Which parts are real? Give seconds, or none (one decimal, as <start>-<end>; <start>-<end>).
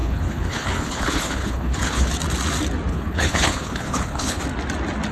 2.1-2.9; 4.4-5.1